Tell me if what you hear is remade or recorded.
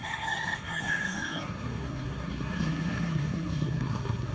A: remade